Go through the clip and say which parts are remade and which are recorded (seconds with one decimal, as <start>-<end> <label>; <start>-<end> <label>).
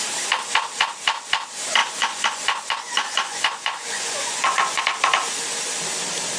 0.0-1.8 recorded; 1.8-4.8 remade; 4.8-6.4 recorded